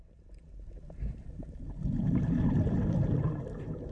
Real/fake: real